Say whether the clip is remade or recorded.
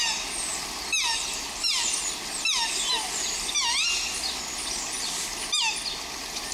recorded